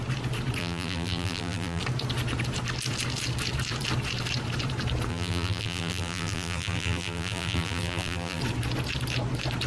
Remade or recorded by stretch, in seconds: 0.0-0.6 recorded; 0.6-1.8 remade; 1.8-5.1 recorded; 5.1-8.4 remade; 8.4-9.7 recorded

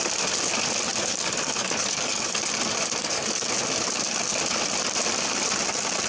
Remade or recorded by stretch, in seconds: 0.0-0.9 recorded; 0.9-2.4 remade; 2.4-3.0 recorded; 3.0-3.5 remade; 3.5-6.1 recorded

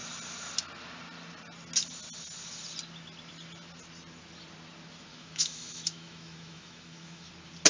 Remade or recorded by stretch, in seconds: 0.0-5.1 recorded; 5.1-7.3 remade; 7.3-7.7 recorded

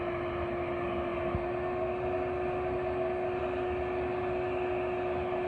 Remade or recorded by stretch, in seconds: 0.0-5.5 recorded

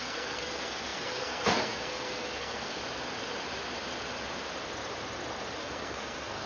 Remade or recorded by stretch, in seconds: 0.0-2.8 remade; 2.8-5.6 recorded; 5.6-6.5 remade

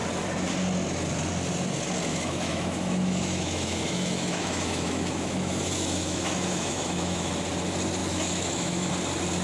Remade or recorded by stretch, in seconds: 0.0-2.1 recorded; 2.1-7.3 remade; 7.3-8.0 recorded; 8.0-8.9 remade; 8.9-9.4 recorded

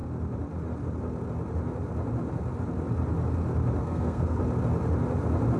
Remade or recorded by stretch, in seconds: 0.0-3.8 recorded; 3.8-4.4 remade; 4.4-5.6 recorded

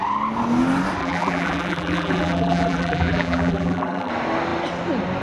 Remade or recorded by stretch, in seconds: 0.0-1.0 recorded; 1.0-4.1 remade; 4.1-5.2 recorded